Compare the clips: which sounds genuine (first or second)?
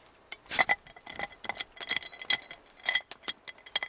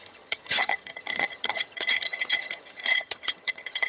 first